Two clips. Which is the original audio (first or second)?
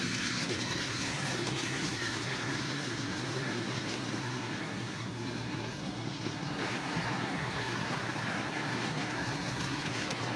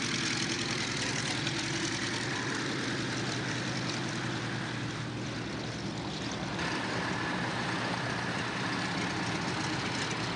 second